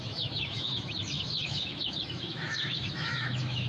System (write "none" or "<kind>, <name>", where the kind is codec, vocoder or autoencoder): autoencoder, DAC-VAE